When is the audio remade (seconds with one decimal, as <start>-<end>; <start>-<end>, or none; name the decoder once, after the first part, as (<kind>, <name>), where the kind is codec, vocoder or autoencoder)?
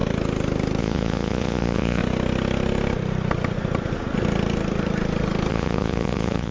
0.8-2.0 (vocoder, Vocos); 5.5-6.5